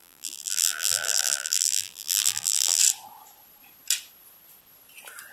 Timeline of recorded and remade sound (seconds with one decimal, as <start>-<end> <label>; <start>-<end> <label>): 0.0-2.8 remade; 2.8-5.3 recorded